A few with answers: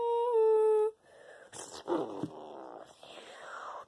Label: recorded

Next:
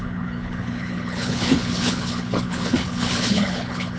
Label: remade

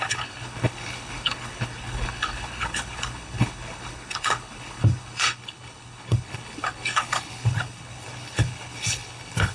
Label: remade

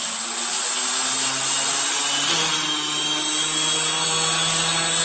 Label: recorded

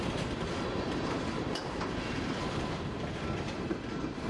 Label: recorded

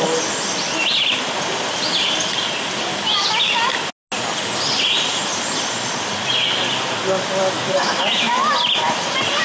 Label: recorded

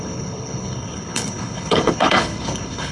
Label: remade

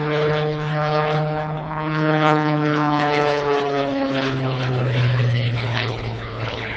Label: remade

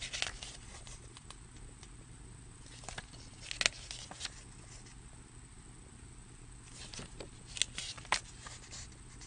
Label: recorded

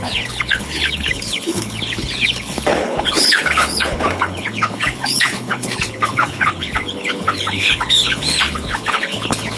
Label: remade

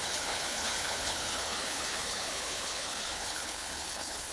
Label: remade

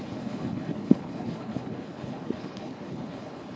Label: remade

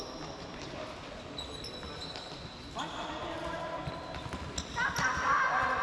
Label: recorded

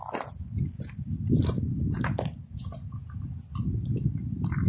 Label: recorded